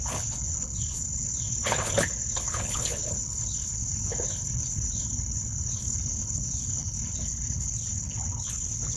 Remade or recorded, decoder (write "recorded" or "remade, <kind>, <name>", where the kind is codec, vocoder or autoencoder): remade, codec, HILCodec